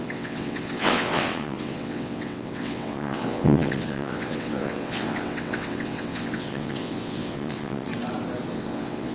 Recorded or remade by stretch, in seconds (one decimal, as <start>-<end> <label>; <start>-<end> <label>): 0.0-7.9 remade; 7.9-8.5 recorded; 8.5-9.1 remade

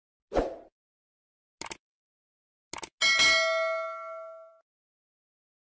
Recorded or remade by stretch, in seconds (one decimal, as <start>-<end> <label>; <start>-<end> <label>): 0.0-5.7 recorded

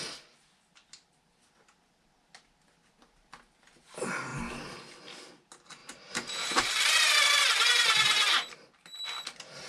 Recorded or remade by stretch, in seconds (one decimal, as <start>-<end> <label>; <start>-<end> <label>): 0.0-5.8 recorded; 5.8-8.5 remade; 8.5-9.7 recorded

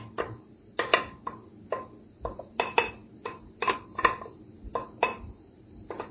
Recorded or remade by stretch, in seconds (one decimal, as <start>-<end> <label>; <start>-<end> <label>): 0.0-0.9 remade; 0.9-2.1 recorded; 2.1-6.1 remade

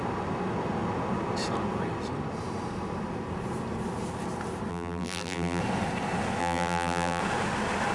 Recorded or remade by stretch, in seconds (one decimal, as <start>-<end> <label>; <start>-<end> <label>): 0.0-4.7 recorded; 4.7-5.6 remade; 5.6-6.4 recorded; 6.4-7.2 remade; 7.2-7.9 recorded